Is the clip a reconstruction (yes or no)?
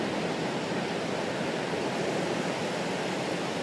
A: no